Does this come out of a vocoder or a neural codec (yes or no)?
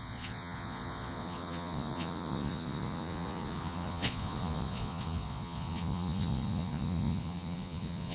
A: yes